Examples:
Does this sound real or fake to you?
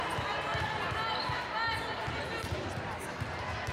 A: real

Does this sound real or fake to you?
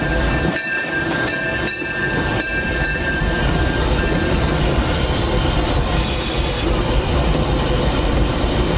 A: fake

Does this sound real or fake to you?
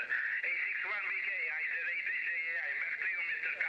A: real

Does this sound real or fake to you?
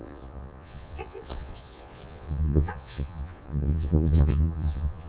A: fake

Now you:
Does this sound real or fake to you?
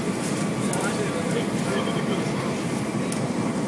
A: real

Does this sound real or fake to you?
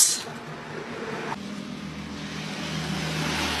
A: real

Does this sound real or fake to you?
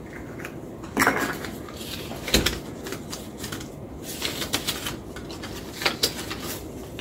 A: real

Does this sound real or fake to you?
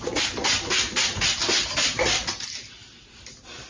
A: real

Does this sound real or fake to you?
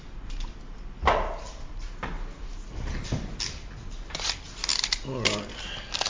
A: real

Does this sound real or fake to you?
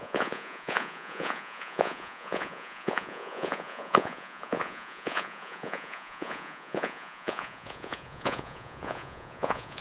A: fake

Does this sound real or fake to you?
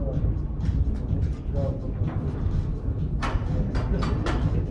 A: real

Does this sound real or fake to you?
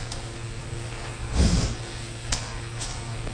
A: fake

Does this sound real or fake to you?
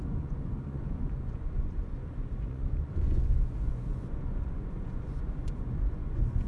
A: fake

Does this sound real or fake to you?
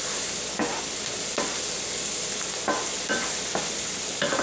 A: real